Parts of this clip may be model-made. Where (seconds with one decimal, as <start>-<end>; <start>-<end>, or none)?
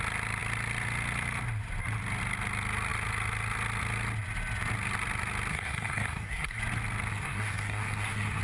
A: 5.5-6.6; 7.1-8.4